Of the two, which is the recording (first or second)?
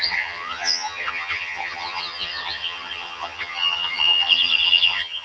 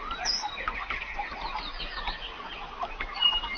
second